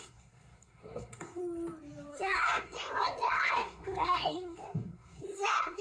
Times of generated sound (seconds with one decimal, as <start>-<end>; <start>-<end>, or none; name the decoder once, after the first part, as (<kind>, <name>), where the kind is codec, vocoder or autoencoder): 0.0-1.4 (codec, SNAC); 2.1-5.8